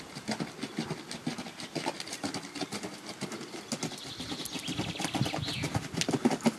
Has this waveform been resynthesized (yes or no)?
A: no